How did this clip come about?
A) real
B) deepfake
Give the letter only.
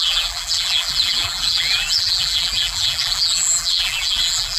B